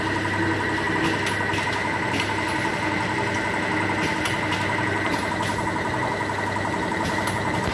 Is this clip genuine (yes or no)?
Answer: yes